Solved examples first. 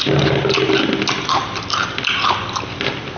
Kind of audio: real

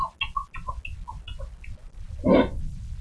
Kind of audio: real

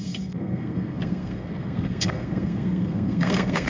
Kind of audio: fake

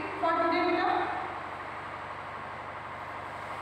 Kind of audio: real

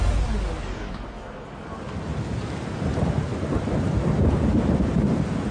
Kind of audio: real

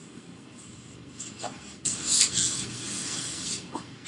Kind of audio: fake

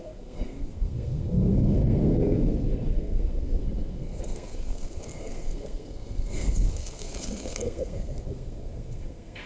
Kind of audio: fake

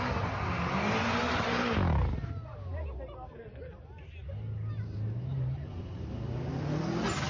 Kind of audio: real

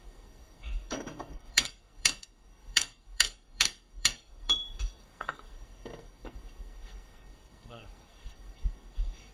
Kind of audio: fake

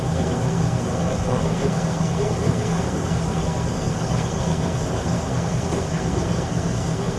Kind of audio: fake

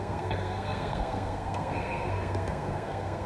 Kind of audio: fake